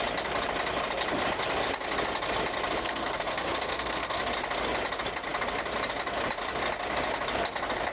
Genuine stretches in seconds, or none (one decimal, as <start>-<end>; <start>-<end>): 0.0-2.8; 4.2-7.9